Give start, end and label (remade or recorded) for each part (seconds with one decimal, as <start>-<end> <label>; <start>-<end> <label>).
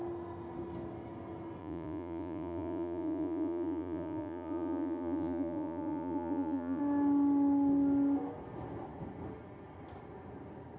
0.0-1.6 recorded; 1.6-6.8 remade; 6.8-10.8 recorded